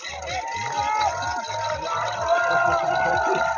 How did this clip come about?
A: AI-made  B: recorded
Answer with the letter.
B